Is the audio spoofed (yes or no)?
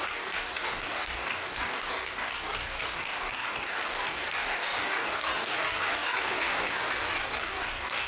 yes